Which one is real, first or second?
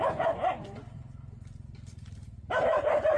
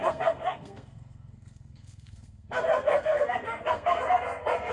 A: first